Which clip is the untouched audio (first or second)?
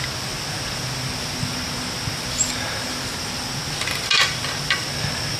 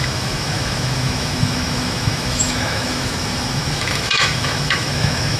first